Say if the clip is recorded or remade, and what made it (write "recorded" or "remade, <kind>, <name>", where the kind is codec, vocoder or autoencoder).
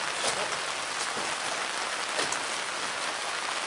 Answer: recorded